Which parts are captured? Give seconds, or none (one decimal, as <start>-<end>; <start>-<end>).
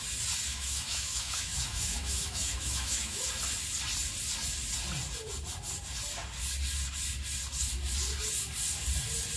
0.0-0.5; 3.2-9.4